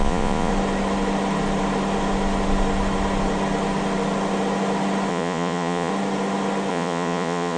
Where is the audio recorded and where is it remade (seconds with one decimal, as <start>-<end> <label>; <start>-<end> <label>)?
0.0-0.5 remade; 0.5-5.1 recorded; 5.1-5.9 remade; 5.9-6.7 recorded; 6.7-7.6 remade